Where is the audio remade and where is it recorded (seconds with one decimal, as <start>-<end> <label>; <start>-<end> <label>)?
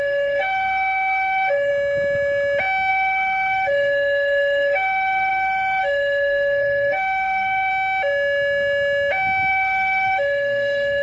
0.0-1.7 remade; 1.7-2.9 recorded; 2.9-7.7 remade; 7.7-9.5 recorded; 9.5-11.0 remade